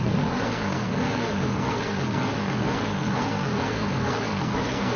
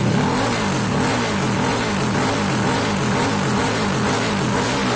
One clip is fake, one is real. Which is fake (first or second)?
first